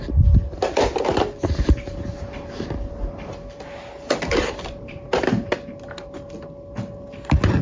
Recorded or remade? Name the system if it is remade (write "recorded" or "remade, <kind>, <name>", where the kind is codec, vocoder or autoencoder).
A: recorded